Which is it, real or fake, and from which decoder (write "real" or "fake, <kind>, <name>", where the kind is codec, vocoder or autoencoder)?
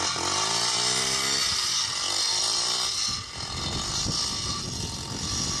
real